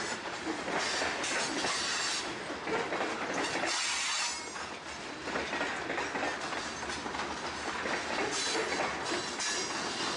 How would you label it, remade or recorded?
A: recorded